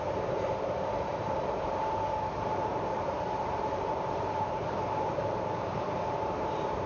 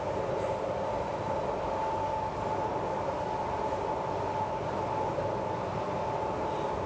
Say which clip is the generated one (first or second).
first